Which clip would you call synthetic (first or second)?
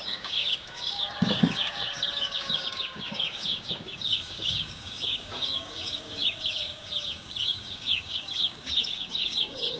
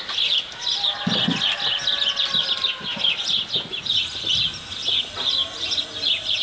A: first